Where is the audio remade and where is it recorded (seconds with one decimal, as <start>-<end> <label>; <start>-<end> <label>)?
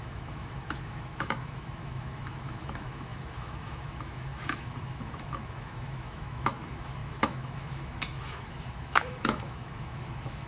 0.0-10.5 remade